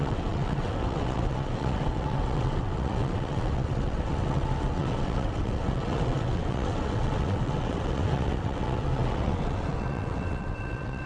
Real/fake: fake